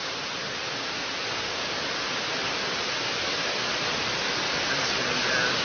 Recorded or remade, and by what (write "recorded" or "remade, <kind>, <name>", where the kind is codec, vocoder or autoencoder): recorded